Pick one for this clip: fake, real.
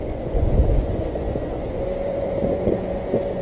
fake